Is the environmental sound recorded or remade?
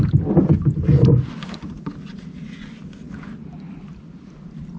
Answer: recorded